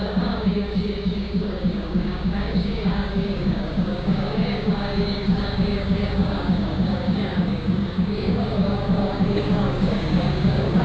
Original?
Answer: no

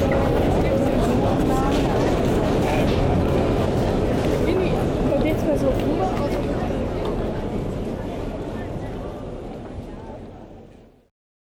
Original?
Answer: yes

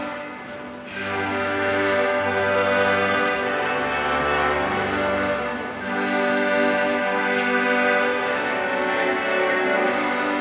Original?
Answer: yes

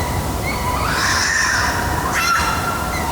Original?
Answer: yes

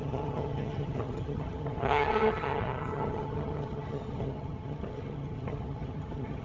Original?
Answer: no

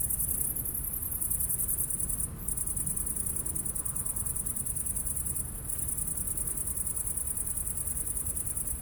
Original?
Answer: yes